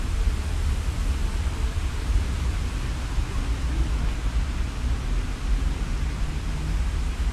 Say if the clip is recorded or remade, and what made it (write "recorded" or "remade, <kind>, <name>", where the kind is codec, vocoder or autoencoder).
recorded